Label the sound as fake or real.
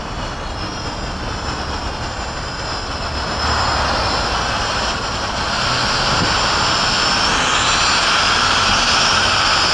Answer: real